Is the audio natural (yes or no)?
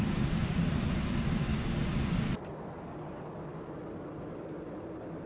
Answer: no